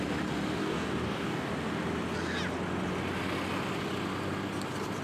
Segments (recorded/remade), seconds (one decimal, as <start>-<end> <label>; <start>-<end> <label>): 0.0-0.6 recorded; 0.6-1.5 remade; 1.5-5.0 recorded